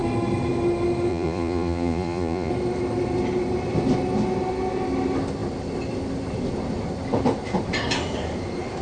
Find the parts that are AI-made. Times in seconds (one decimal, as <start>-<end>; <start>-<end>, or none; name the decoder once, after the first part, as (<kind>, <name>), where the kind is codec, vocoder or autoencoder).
1.1-2.5 (vocoder, Vocos)